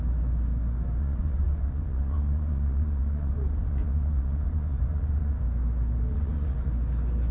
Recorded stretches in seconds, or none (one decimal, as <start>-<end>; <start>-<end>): 0.0-1.0; 5.4-6.1; 6.7-7.3